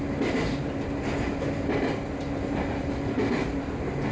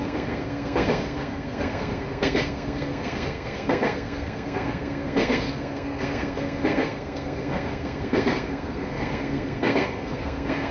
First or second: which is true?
first